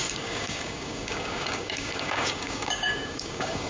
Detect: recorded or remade remade